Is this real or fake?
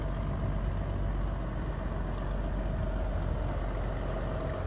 real